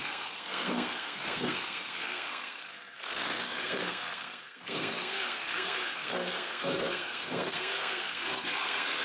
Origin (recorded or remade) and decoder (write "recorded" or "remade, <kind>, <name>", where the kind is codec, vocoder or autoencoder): remade, codec, SNAC